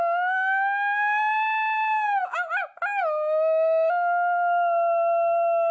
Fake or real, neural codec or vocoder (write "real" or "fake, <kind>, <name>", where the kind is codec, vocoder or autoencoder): real